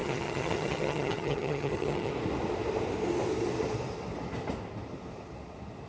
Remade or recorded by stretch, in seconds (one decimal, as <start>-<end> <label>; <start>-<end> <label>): 0.0-2.1 remade; 2.1-5.9 recorded